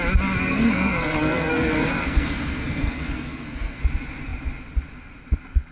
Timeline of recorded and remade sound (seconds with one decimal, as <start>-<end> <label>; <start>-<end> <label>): 0.0-0.4 recorded; 0.4-3.8 remade; 3.8-5.7 recorded